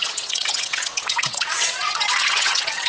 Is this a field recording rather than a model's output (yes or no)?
no